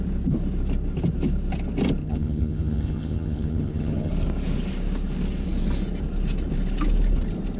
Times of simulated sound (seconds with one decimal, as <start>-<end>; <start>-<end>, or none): 2.0-4.1